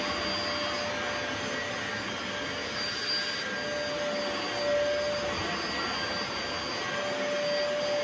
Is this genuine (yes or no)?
yes